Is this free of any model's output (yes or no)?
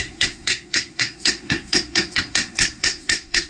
no